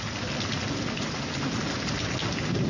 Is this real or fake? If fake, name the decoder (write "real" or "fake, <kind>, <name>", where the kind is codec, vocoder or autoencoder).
real